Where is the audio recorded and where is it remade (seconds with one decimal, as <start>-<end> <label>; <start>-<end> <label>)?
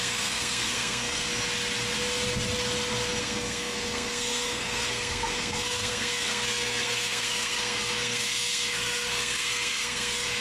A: 0.0-1.3 remade; 1.3-3.2 recorded; 3.2-10.4 remade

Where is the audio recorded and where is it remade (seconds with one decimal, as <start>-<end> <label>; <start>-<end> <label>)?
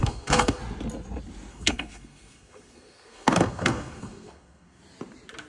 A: 0.0-0.6 remade; 0.6-1.5 recorded; 1.5-4.8 remade; 4.8-5.5 recorded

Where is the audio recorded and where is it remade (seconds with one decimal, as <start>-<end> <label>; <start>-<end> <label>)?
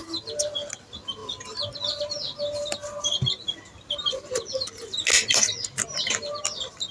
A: 0.0-6.9 recorded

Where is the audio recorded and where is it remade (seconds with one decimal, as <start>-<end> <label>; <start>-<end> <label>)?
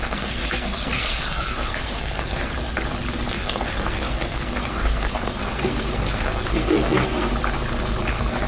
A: 0.0-2.5 remade; 2.5-3.3 recorded; 3.3-7.3 remade; 7.3-8.1 recorded; 8.1-8.5 remade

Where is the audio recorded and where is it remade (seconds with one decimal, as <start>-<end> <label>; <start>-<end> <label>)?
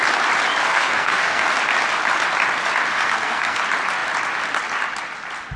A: 0.0-0.6 recorded; 0.6-1.5 remade; 1.5-2.9 recorded; 2.9-3.6 remade; 3.6-5.6 recorded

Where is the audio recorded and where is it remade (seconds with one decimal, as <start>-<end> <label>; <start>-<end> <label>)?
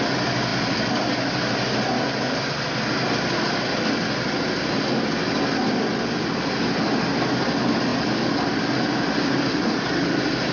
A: 0.0-10.5 recorded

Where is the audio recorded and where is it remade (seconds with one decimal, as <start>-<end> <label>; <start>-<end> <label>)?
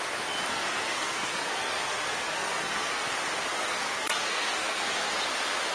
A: 0.0-0.5 recorded; 0.5-3.1 remade; 3.1-3.5 recorded; 3.5-5.2 remade; 5.2-5.7 recorded